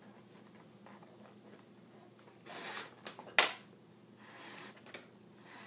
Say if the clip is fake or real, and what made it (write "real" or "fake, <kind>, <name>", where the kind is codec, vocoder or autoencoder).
real